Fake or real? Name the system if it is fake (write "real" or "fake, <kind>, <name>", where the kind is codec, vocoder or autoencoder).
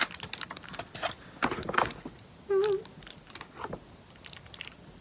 real